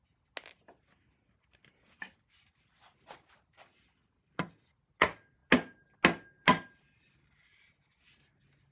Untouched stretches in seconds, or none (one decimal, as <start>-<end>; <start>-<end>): 0.0-8.7